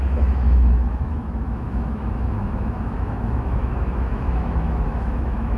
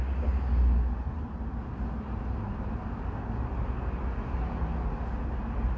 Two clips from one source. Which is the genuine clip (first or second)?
second